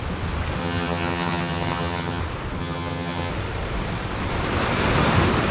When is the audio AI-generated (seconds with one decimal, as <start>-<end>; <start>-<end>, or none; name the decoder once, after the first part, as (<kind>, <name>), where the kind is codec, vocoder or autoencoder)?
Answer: 0.6-2.2 (vocoder, HiFi-GAN); 2.6-3.3